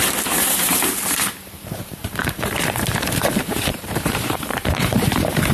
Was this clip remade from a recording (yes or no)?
yes